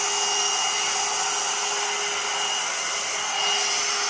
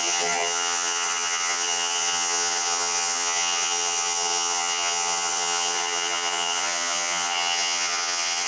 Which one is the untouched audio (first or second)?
first